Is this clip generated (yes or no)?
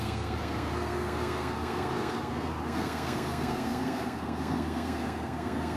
yes